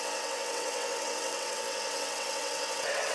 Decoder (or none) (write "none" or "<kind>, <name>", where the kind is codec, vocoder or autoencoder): vocoder, WaveNeXt